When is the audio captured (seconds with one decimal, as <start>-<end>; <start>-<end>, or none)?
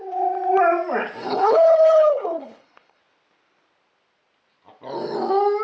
0.0-1.2; 3.0-5.6